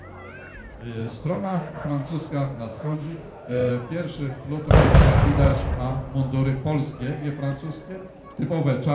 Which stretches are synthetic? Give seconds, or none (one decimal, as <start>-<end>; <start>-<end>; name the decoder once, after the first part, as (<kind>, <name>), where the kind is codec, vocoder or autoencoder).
1.0-2.3 (autoencoder, DAC-VAE); 2.7-3.7